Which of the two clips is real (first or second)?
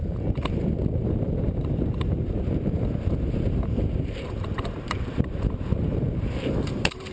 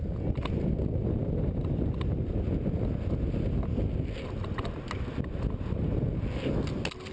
second